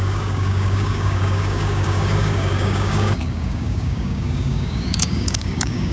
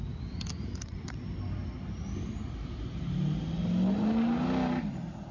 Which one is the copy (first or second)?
first